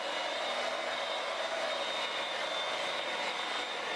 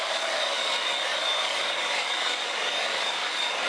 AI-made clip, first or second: second